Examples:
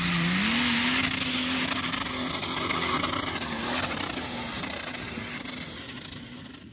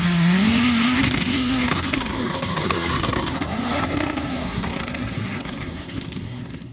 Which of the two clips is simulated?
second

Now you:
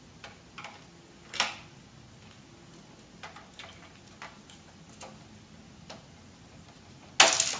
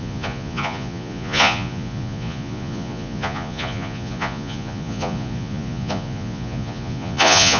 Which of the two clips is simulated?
second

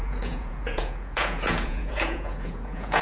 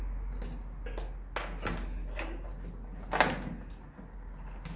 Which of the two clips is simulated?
first